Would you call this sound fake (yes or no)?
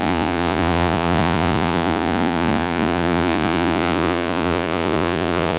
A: yes